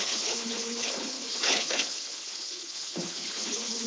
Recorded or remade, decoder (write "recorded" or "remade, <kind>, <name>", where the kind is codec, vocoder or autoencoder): remade, codec, HILCodec